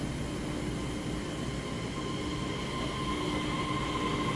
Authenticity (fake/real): real